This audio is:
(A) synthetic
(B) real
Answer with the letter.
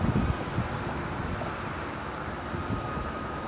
B